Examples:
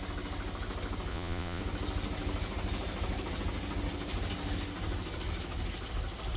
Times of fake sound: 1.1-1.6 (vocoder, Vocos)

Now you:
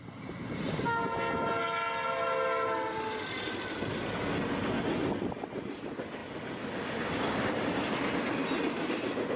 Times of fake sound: none

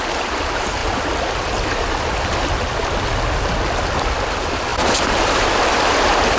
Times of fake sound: 0.0-3.1 (vocoder, BigVGAN v2); 3.8-6.4

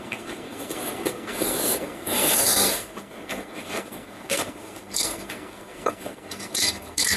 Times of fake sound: 0.0-7.2 (codec, SNAC)

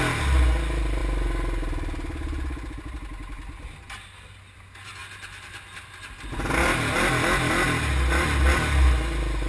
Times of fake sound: none

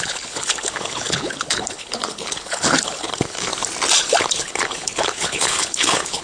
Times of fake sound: 0.0-3.5 (codec, HILCodec); 4.2-6.2